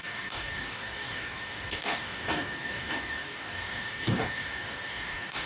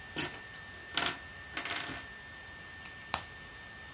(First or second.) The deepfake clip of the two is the first